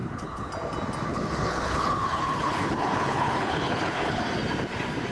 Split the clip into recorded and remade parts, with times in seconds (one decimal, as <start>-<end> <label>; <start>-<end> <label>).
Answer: 0.0-0.5 remade; 0.5-1.1 recorded; 1.1-4.2 remade; 4.2-5.1 recorded